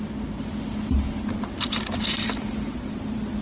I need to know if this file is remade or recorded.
recorded